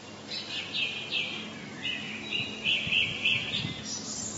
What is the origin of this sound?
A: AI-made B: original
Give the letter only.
B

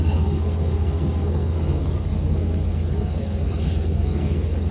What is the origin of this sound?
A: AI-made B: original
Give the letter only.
A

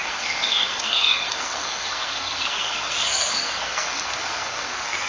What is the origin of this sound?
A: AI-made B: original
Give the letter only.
A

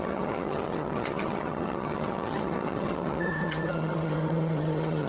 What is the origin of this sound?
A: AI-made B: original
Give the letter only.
A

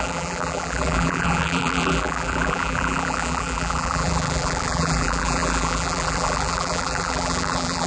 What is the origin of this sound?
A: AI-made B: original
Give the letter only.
A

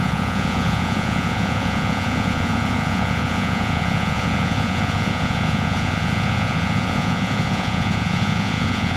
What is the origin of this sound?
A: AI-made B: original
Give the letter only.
A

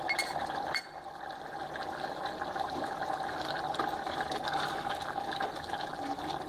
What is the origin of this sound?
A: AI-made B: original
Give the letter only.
B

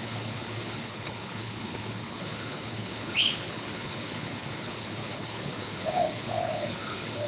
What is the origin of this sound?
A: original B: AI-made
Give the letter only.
B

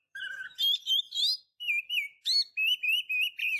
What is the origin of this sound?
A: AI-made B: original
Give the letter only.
B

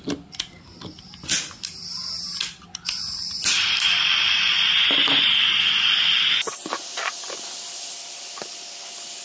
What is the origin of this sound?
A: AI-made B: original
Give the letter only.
B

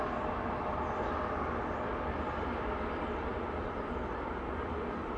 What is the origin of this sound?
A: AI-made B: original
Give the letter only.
B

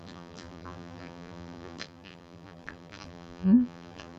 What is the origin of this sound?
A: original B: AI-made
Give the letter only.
B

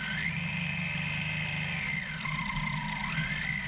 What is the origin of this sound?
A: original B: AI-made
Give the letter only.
A